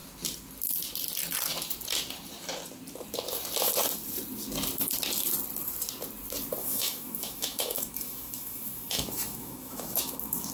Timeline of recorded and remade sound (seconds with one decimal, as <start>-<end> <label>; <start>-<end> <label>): 0.0-6.6 recorded; 6.6-10.5 remade